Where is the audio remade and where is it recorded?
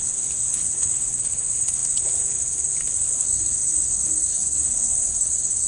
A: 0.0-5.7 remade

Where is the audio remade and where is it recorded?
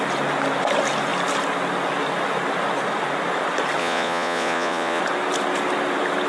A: 0.0-3.8 recorded; 3.8-5.0 remade; 5.0-6.3 recorded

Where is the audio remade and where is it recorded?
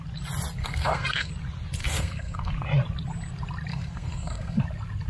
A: 0.0-0.6 recorded; 0.6-1.3 remade; 1.3-1.8 recorded; 1.8-2.5 remade; 2.5-3.7 recorded; 3.7-4.6 remade; 4.6-5.1 recorded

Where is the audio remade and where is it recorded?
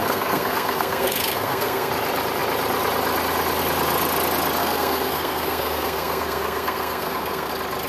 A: 0.0-1.9 remade; 1.9-4.6 recorded; 4.6-7.5 remade; 7.5-7.9 recorded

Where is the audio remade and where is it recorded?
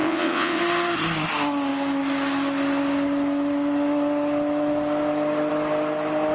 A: 0.0-0.6 remade; 0.6-6.3 recorded